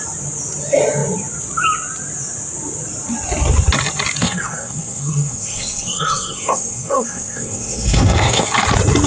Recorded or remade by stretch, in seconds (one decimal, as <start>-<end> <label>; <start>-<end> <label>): 0.0-4.2 recorded; 4.2-8.5 remade; 8.5-9.1 recorded